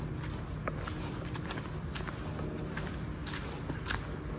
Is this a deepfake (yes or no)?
no